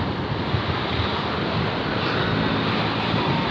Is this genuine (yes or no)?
yes